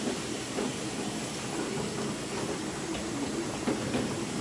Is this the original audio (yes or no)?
yes